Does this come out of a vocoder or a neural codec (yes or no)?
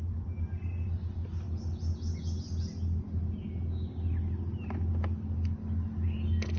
no